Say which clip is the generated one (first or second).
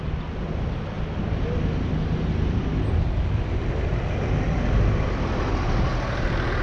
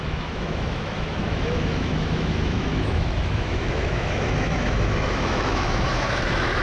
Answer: second